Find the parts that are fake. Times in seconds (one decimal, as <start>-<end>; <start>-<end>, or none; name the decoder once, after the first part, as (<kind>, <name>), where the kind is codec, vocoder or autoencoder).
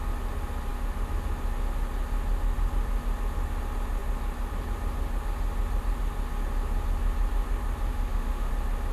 7.9-8.5 (autoencoder, DAC-VAE)